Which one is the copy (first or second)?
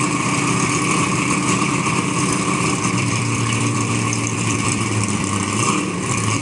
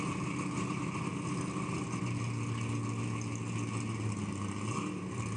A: first